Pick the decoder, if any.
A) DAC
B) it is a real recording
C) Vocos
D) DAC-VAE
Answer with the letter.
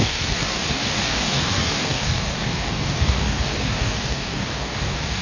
A